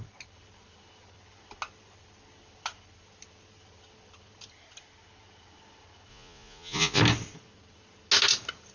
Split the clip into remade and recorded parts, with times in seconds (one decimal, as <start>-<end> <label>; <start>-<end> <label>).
0.0-6.1 recorded; 6.1-7.0 remade; 7.0-8.7 recorded